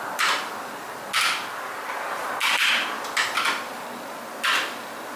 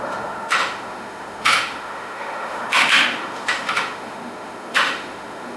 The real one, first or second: first